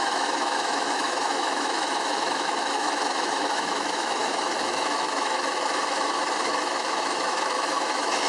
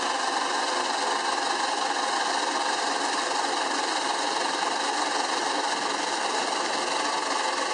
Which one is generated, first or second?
first